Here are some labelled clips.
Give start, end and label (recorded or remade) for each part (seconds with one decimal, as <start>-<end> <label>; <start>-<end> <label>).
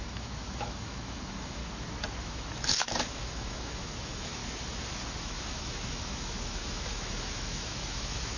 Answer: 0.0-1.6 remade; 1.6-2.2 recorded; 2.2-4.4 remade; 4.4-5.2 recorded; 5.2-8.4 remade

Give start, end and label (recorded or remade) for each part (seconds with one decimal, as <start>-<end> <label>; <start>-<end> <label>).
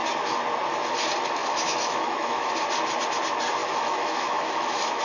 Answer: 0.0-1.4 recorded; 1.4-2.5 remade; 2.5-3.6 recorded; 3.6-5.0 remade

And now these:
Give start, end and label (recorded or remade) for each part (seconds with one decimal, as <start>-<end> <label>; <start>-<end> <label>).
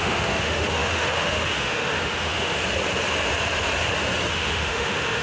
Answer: 0.0-2.6 remade; 2.6-4.3 recorded; 4.3-5.2 remade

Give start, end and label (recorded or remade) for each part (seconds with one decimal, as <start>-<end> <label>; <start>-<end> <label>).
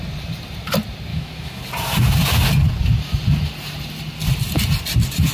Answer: 0.0-1.1 recorded; 1.1-1.6 remade; 1.6-5.3 recorded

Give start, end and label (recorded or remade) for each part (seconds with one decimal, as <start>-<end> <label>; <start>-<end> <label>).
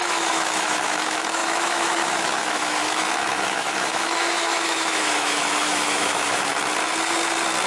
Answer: 0.0-6.5 remade; 6.5-7.7 recorded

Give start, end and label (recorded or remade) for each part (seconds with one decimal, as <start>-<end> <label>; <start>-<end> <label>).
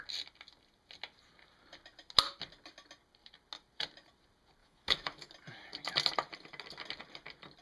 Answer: 0.0-4.6 recorded; 4.6-5.3 remade; 5.3-7.6 recorded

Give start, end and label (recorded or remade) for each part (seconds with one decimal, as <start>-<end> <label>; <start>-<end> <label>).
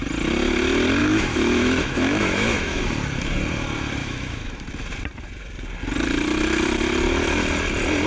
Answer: 0.0-1.0 recorded; 1.0-2.8 remade; 2.8-4.0 recorded; 4.0-4.6 remade; 4.6-8.1 recorded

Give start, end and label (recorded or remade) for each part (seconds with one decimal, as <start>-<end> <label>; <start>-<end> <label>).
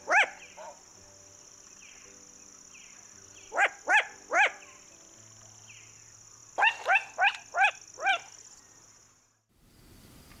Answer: 0.0-10.4 recorded